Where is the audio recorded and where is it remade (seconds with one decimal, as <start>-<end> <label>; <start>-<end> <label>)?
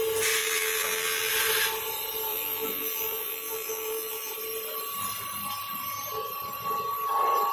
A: 0.0-0.4 recorded; 0.4-1.3 remade; 1.3-2.3 recorded; 2.3-4.3 remade; 4.3-7.5 recorded